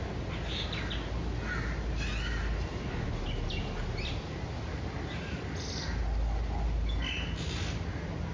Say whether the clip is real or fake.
real